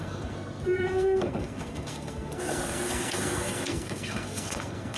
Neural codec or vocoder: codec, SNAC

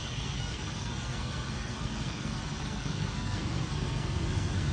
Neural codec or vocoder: codec, SNAC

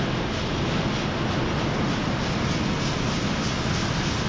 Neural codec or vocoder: none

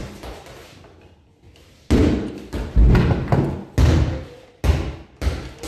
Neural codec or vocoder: none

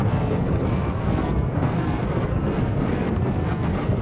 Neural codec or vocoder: codec, SNAC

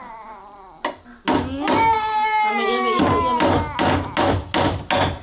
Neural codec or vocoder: none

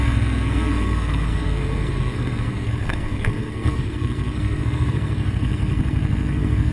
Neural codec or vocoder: codec, SNAC